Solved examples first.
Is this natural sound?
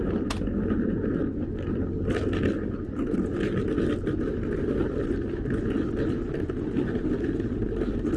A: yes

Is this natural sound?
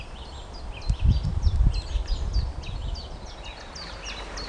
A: yes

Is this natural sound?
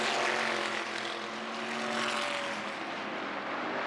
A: yes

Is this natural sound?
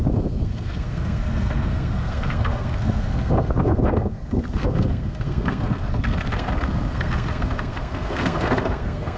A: no